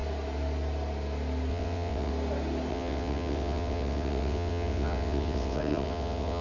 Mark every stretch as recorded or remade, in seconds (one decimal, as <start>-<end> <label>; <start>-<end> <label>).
0.0-1.5 recorded; 1.5-2.1 remade; 2.1-2.7 recorded; 2.7-6.4 remade